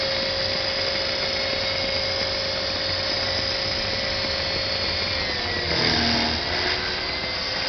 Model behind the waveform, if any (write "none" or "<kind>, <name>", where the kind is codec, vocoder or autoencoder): none